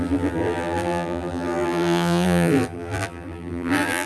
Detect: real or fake fake